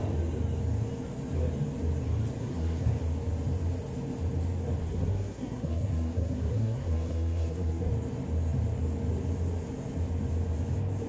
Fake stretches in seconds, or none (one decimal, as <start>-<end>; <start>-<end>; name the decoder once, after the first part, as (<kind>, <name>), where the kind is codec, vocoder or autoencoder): 2.4-2.9 (codec, SNAC); 4.8-7.9